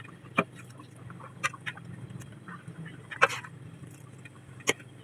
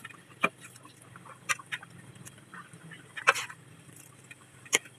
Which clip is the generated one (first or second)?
second